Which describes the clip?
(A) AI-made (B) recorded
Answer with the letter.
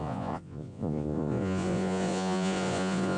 A